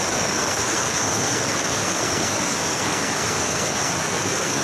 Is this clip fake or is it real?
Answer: fake